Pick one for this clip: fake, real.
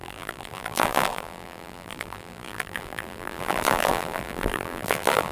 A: fake